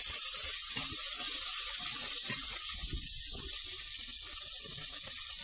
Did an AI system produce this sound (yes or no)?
no